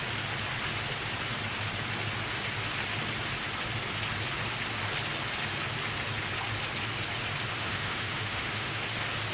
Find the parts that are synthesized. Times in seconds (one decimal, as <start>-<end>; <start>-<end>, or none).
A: 7.5-8.8